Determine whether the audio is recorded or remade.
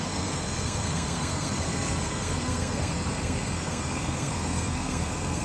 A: remade